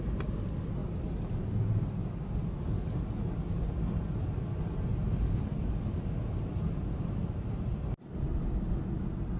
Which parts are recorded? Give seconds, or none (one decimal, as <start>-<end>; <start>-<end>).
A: 0.0-9.4